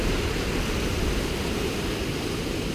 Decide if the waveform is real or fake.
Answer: real